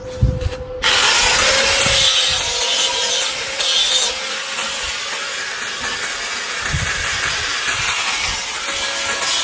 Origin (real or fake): real